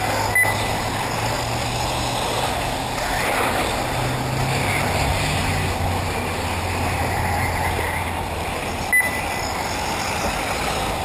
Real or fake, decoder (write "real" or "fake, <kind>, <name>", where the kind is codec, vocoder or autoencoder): real